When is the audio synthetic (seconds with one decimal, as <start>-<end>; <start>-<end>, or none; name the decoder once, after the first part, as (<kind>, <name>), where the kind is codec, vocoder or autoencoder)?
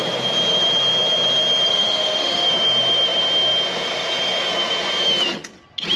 1.7-2.5 (autoencoder, DAC-VAE)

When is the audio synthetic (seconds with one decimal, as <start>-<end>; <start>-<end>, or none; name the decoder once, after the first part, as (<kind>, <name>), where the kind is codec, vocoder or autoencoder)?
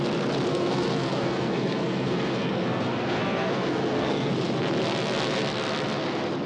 0.5-4.3 (codec, SNAC)